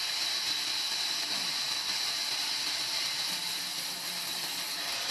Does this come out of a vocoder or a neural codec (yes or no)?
no